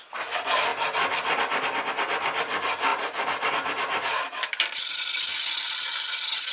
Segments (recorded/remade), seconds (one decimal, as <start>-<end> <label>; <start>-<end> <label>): 0.0-6.5 recorded